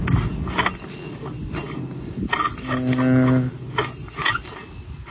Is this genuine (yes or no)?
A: yes